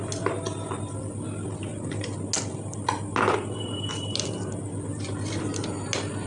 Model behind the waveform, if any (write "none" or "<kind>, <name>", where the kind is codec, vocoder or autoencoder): none